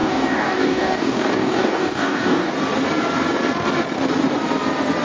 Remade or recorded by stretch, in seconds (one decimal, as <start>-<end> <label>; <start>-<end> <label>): 0.0-2.5 remade; 2.5-5.0 recorded

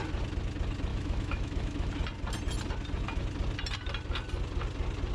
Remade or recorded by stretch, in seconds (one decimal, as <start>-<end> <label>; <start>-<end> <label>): 0.0-0.9 recorded; 0.9-1.9 remade; 1.9-5.1 recorded

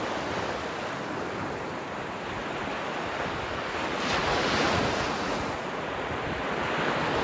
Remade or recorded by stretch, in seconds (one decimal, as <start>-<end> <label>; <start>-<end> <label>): 0.0-4.2 recorded; 4.2-6.1 remade; 6.1-7.2 recorded

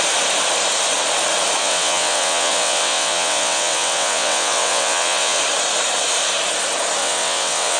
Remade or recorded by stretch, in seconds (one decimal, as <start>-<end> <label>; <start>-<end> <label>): 0.0-1.6 recorded; 1.6-5.4 remade; 5.4-7.0 recorded; 7.0-7.8 remade

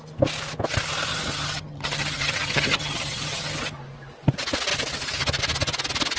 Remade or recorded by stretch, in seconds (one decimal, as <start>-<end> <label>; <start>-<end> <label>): 0.0-1.1 recorded; 1.1-3.6 remade; 3.6-6.2 recorded